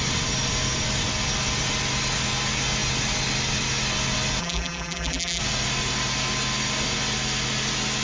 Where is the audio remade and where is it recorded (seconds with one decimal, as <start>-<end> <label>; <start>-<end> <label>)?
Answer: 0.0-4.4 recorded; 4.4-5.4 remade; 5.4-8.0 recorded